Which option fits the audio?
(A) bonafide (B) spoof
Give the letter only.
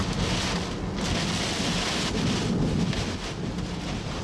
A